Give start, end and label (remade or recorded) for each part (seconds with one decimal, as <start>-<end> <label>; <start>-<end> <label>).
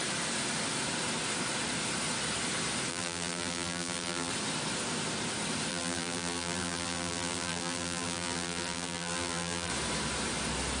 0.0-2.9 recorded; 2.9-4.3 remade; 4.3-5.7 recorded; 5.7-9.7 remade; 9.7-10.8 recorded